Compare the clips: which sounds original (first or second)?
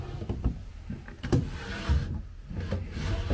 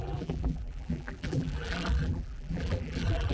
first